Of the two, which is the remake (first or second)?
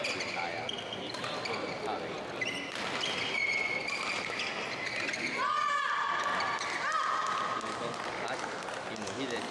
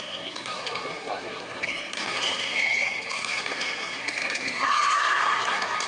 second